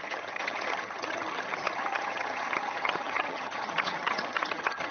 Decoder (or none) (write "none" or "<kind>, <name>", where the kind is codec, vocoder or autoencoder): vocoder, HiFi-GAN